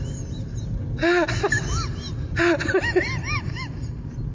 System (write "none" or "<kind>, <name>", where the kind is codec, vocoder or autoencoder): none